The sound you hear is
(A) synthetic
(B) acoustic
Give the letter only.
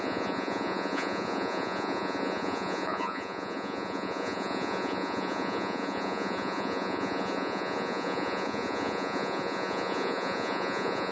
A